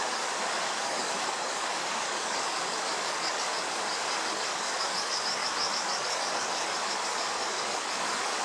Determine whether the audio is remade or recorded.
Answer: remade